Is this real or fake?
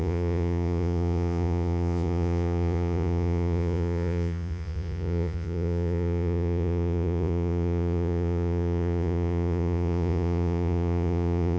fake